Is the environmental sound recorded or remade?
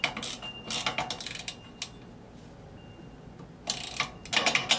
recorded